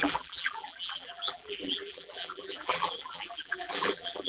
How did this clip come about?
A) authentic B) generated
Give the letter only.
B